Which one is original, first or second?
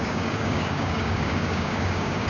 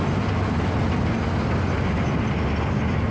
second